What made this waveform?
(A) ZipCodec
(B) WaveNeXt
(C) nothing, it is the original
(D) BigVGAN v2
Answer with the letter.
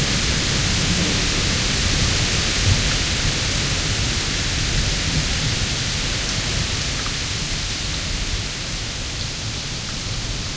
C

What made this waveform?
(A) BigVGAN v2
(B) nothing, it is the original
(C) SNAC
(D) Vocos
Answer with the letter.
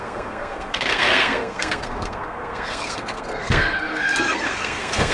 C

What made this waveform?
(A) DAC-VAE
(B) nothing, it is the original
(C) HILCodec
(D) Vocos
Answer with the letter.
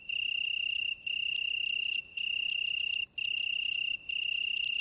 B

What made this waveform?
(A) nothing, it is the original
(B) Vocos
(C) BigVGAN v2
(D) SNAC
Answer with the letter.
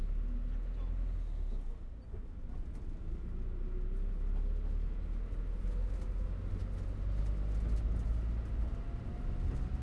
A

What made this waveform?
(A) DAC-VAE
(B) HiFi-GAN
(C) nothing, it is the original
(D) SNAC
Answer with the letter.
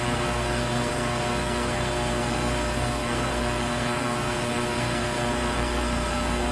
D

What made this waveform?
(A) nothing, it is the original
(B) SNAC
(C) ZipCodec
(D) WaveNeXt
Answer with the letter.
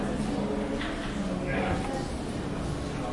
A